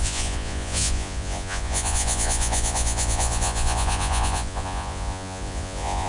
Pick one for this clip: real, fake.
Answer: fake